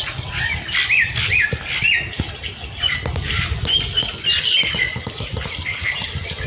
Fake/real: real